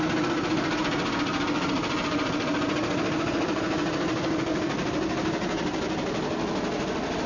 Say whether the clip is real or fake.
real